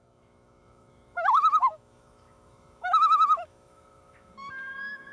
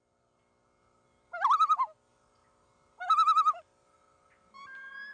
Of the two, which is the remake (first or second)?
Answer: first